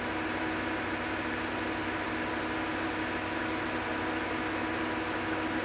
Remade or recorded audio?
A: recorded